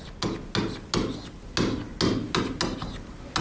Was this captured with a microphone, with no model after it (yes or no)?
yes